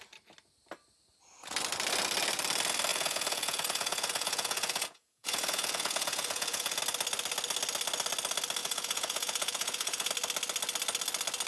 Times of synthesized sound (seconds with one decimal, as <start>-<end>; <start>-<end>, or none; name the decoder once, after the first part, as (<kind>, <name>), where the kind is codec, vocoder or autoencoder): 2.9-6.8 (vocoder, Vocos); 8.6-10.1